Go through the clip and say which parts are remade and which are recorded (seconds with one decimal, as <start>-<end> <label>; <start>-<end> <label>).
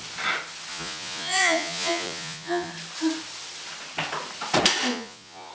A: 0.0-0.7 recorded; 0.7-2.7 remade; 2.7-4.9 recorded; 4.9-5.5 remade